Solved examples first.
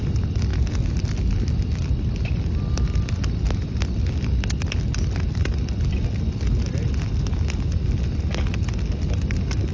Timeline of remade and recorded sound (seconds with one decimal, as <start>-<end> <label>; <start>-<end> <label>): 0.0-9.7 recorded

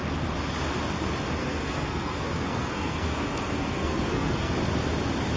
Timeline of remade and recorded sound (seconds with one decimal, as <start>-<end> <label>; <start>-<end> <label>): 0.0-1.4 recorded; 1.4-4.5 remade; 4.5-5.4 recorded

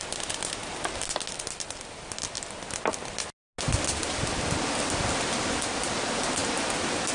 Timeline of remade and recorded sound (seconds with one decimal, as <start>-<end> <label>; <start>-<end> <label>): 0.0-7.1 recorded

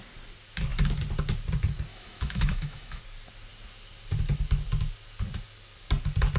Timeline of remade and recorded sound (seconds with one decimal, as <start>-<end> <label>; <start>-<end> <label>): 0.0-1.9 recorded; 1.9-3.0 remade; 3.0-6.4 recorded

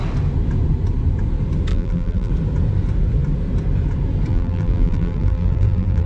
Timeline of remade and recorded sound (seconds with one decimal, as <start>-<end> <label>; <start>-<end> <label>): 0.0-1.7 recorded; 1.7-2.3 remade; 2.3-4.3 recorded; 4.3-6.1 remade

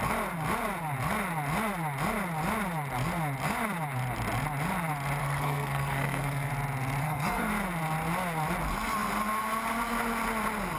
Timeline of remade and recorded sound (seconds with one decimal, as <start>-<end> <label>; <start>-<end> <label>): 0.0-5.2 recorded; 5.2-6.5 remade; 6.5-7.0 recorded; 7.0-7.5 remade; 7.5-10.8 recorded

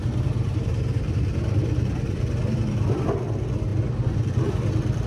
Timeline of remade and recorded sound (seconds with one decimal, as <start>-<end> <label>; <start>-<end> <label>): 0.0-3.1 remade; 3.1-5.1 recorded

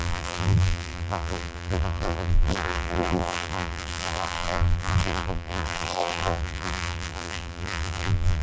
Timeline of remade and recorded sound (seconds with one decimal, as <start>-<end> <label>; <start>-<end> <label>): 0.0-8.4 remade